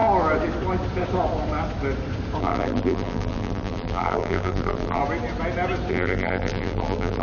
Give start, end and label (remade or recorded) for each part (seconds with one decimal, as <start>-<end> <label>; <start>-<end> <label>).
0.0-2.4 recorded; 2.4-5.0 remade; 5.0-5.9 recorded; 5.9-7.2 remade